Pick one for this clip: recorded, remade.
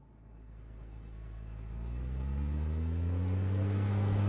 remade